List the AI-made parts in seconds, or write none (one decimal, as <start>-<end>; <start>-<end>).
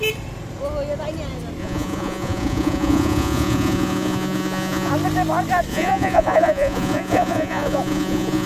1.6-4.9; 5.7-8.5